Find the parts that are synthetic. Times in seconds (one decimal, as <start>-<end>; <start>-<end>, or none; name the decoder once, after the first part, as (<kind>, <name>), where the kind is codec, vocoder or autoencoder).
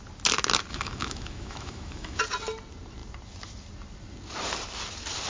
0.7-2.2 (autoencoder, DAC-VAE)